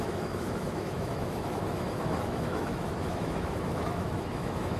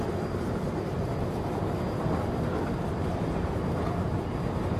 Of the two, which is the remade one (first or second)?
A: first